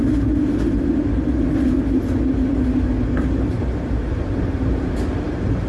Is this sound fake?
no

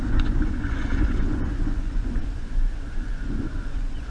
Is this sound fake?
yes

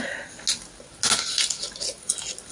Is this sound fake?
no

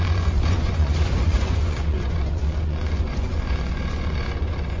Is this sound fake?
yes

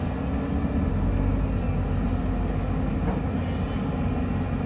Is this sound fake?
no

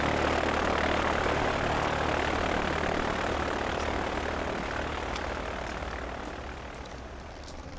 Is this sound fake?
no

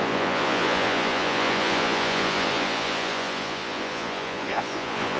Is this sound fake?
yes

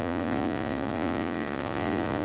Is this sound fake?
yes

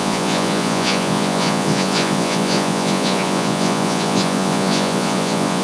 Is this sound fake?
yes